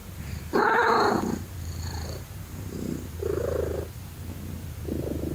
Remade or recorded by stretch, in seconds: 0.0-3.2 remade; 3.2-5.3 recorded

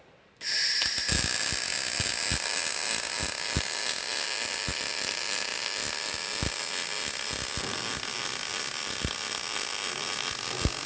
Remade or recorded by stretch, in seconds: 0.0-10.9 recorded